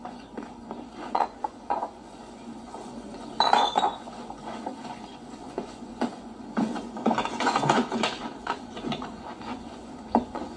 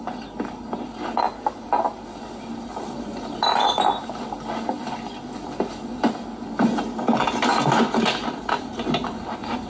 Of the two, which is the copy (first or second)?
first